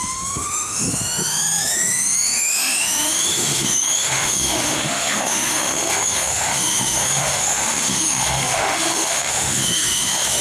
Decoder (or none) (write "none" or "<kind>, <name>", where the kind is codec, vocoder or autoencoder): autoencoder, DAC-VAE